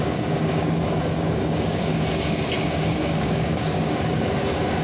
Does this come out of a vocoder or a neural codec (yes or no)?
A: yes